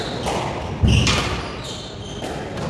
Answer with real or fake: real